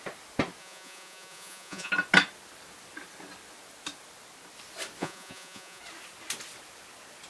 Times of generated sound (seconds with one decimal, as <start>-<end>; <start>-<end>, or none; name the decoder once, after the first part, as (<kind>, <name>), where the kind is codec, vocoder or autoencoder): 0.6-1.9 (vocoder, Vocos); 5.0-5.8

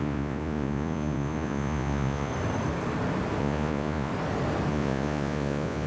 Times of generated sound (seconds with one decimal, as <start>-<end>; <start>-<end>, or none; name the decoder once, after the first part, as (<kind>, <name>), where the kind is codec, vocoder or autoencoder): 0.0-2.3 (vocoder, Vocos); 3.4-4.1; 4.7-5.9

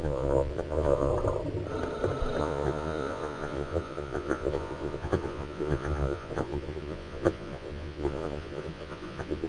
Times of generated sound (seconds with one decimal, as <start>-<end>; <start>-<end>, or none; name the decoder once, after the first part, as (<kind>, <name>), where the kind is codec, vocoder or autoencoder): 0.0-1.1 (vocoder, Vocos); 2.4-9.5

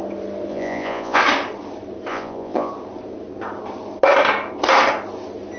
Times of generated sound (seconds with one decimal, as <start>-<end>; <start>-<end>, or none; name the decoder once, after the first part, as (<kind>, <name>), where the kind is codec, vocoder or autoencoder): 0.5-1.2 (vocoder, Vocos); 2.1-2.7

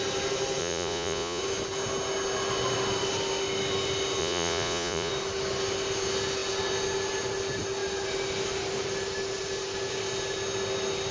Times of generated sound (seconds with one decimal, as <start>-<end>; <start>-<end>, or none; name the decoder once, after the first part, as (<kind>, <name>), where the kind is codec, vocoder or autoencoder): 0.6-1.4 (vocoder, Vocos); 4.2-5.1

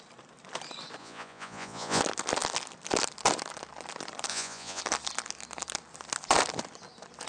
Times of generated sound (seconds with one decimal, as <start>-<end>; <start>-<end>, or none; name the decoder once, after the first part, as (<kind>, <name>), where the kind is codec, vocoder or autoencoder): 1.0-2.0 (vocoder, Vocos); 4.3-4.8

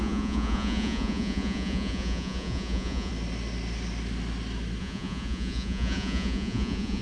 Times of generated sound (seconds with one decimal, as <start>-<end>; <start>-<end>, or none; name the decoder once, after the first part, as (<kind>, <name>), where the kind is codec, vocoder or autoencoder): 0.0-3.1 (vocoder, Vocos); 4.8-7.0

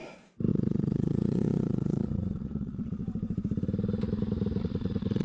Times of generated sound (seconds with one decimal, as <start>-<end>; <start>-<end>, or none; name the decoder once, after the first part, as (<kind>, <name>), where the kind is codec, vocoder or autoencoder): 0.5-3.0 (vocoder, Vocos); 4.6-5.2